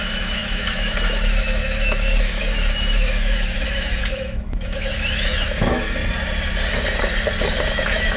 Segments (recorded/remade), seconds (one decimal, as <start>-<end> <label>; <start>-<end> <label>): 0.0-6.0 remade; 6.0-7.7 recorded; 7.7-8.2 remade